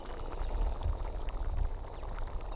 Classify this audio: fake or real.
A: real